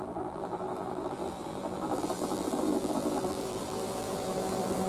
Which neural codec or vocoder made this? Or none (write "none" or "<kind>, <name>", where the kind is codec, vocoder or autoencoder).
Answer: vocoder, BigVGAN v2